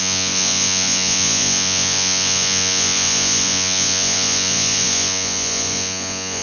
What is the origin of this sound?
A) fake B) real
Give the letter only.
A